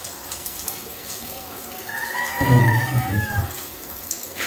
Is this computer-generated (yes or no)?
yes